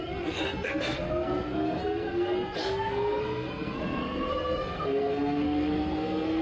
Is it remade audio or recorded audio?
remade